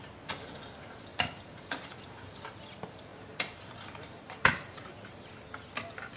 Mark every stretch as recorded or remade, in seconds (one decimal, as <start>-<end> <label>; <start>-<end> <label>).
0.0-1.1 recorded; 1.1-2.4 remade; 2.4-3.1 recorded; 3.1-5.3 remade; 5.3-6.2 recorded